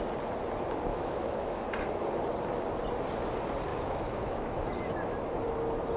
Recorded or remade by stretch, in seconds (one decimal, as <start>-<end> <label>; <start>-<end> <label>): 0.0-0.9 recorded; 0.9-1.6 remade; 1.6-3.7 recorded; 3.7-4.7 remade; 4.7-6.0 recorded